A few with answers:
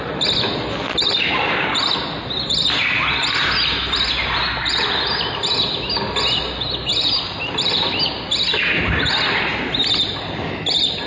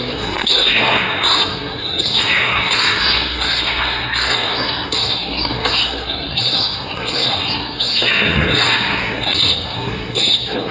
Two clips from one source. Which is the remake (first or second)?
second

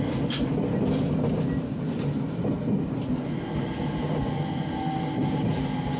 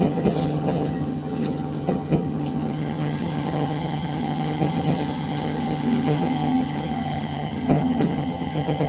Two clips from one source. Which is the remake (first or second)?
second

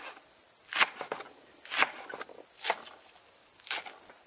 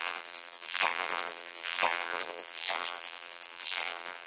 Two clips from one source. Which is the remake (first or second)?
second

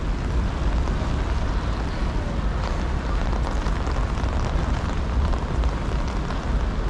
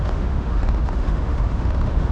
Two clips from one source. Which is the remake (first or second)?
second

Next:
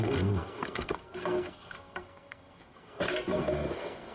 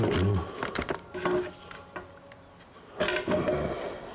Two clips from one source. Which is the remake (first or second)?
first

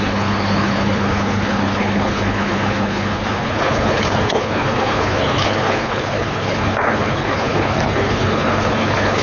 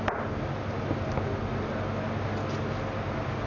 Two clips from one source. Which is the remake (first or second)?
first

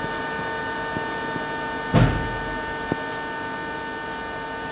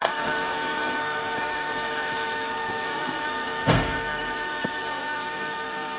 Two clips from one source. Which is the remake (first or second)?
second